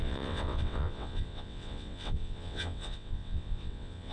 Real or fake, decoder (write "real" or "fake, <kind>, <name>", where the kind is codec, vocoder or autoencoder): fake, vocoder, WaveNeXt